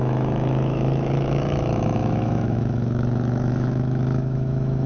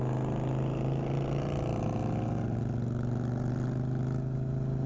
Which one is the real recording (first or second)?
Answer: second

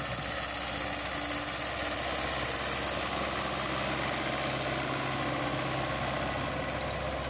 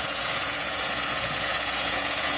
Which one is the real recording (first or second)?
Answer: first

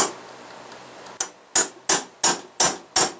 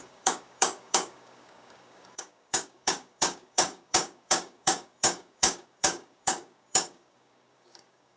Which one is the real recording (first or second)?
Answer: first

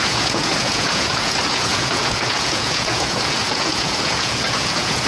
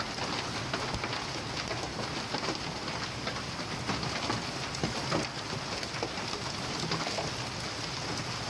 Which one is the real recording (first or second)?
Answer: second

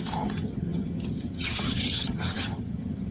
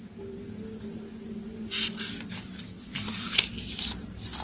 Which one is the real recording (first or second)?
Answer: second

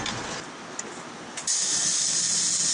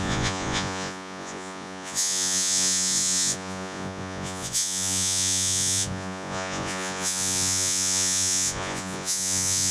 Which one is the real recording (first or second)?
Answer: first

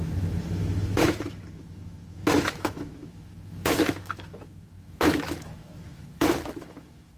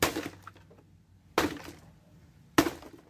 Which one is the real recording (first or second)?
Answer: second